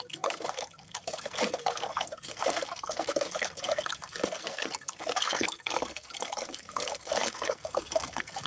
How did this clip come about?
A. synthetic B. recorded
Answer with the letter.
A